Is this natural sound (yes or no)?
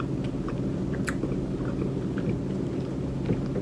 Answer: yes